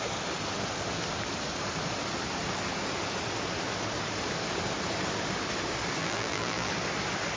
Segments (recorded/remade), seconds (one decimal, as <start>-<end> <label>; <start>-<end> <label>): 0.0-6.0 recorded; 6.0-6.7 remade; 6.7-7.4 recorded

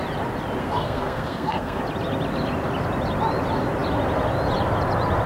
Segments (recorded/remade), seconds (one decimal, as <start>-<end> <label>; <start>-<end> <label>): 0.0-0.6 recorded; 0.6-1.8 remade; 1.8-5.3 recorded

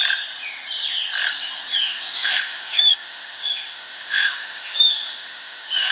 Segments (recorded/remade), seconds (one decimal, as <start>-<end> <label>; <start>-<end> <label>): 0.0-1.8 recorded; 1.8-5.9 remade

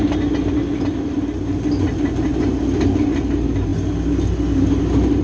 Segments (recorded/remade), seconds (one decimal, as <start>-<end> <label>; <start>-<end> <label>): 0.0-5.2 recorded

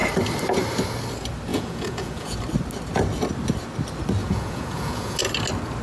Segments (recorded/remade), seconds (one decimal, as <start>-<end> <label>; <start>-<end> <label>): 0.0-1.5 recorded; 1.5-2.4 remade; 2.4-4.2 recorded; 4.2-5.2 remade; 5.2-5.8 recorded

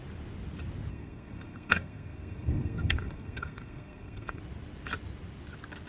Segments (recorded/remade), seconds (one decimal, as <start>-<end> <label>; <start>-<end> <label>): 0.0-0.9 recorded; 0.9-4.4 remade; 4.4-5.9 recorded

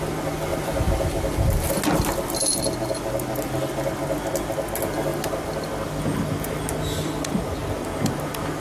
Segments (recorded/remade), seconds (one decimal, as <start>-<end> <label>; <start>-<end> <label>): 0.0-0.5 recorded; 0.5-1.7 remade; 1.7-8.6 recorded